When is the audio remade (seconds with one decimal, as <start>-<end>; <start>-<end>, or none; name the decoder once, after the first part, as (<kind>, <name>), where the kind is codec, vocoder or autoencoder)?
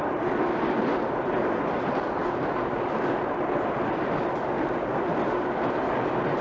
2.2-5.1 (vocoder, BigVGAN v2)